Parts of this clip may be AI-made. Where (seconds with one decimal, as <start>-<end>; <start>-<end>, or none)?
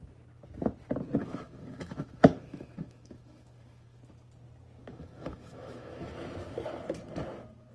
1.2-4.0; 4.9-6.1